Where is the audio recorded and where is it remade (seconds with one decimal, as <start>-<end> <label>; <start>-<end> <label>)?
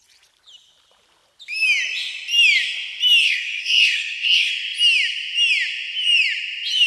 0.0-3.2 recorded; 3.2-4.5 remade; 4.5-6.9 recorded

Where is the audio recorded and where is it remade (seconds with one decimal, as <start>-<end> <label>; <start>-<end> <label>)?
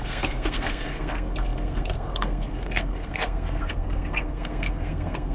0.0-5.3 remade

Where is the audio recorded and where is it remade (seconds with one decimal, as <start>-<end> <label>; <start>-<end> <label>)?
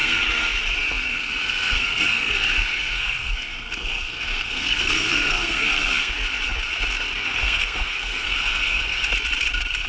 0.0-0.6 remade; 0.6-1.1 recorded; 1.1-6.1 remade; 6.1-7.4 recorded; 7.4-9.1 remade; 9.1-9.9 recorded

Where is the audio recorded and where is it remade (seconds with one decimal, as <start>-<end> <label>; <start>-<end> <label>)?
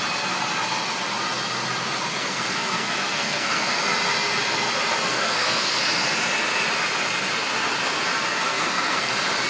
0.0-2.2 recorded; 2.2-3.8 remade; 3.8-5.1 recorded; 5.1-5.7 remade; 5.7-8.3 recorded; 8.3-9.1 remade; 9.1-9.5 recorded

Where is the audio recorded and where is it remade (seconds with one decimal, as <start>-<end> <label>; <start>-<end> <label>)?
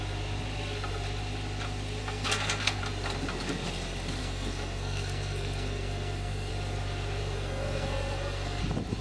0.0-2.0 recorded; 2.0-2.8 remade; 2.8-4.2 recorded; 4.2-6.5 remade; 6.5-7.2 recorded; 7.2-8.6 remade; 8.6-9.0 recorded